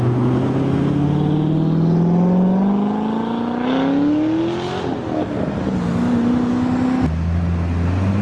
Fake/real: real